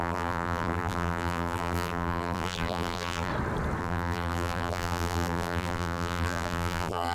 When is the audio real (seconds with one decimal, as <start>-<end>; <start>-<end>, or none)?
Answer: 3.3-3.8

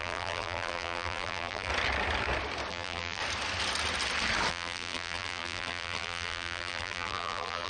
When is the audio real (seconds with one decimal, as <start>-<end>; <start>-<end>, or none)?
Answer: 1.7-2.7; 3.2-4.5